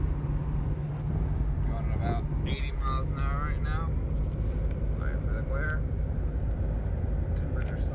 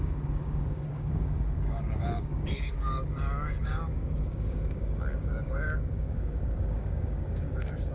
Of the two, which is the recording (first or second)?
first